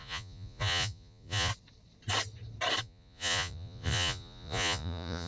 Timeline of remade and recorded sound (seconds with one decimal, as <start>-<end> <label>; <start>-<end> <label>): 0.0-1.5 remade; 1.5-2.8 recorded; 2.8-5.3 remade